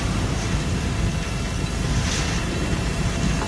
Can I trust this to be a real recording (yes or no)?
yes